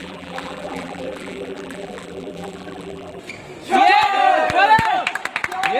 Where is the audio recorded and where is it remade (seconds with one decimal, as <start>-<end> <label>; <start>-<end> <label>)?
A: 0.0-3.2 remade; 3.2-5.8 recorded